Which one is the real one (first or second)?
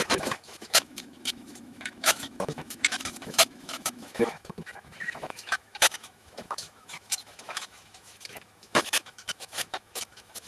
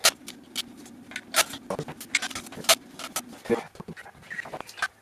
second